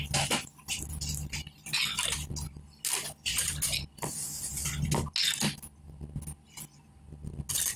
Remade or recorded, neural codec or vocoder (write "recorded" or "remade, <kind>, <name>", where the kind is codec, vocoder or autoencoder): recorded